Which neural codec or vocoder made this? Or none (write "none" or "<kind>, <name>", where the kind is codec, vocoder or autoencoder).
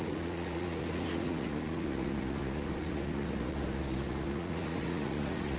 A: vocoder, Vocos